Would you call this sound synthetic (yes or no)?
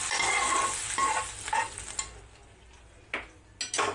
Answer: no